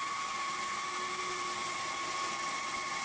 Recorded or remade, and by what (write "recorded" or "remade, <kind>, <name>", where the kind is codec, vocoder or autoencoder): recorded